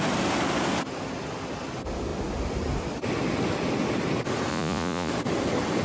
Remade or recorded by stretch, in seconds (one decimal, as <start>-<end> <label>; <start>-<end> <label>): 0.0-4.5 recorded; 4.5-5.1 remade; 5.1-5.8 recorded

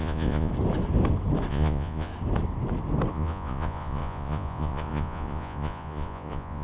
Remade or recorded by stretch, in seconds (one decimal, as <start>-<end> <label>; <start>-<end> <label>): 0.0-0.5 remade; 0.5-1.5 recorded; 1.5-2.1 remade; 2.1-3.1 recorded; 3.1-6.6 remade